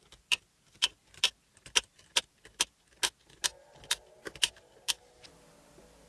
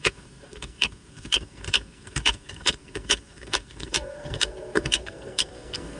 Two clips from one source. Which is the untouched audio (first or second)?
first